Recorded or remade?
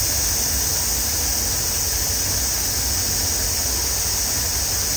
recorded